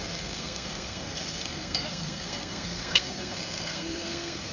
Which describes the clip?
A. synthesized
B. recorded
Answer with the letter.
A